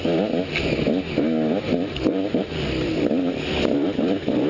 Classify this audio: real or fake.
real